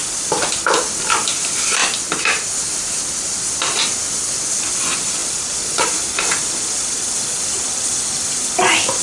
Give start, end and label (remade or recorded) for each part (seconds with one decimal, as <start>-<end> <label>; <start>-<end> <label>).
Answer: 0.0-9.0 remade